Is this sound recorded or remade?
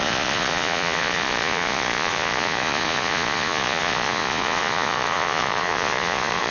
remade